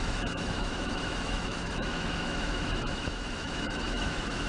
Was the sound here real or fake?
fake